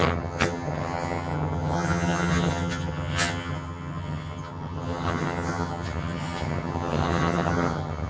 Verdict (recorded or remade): remade